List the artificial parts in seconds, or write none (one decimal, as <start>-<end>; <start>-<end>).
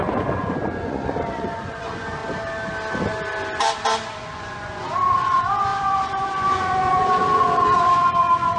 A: 0.0-2.2; 4.2-8.6